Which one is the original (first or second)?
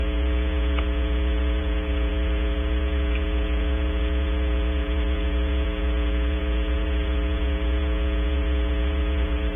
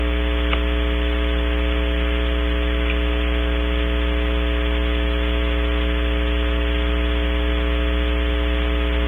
second